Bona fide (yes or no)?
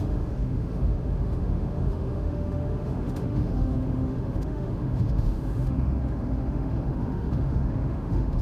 no